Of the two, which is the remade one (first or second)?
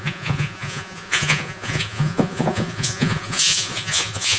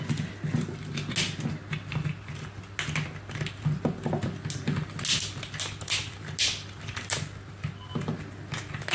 first